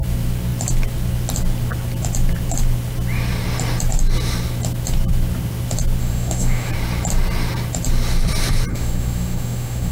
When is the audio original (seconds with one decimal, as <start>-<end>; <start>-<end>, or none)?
0.0-6.0; 6.7-8.7